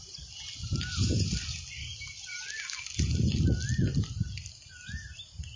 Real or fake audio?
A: real